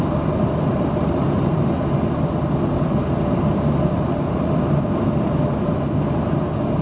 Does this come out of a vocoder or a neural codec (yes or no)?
no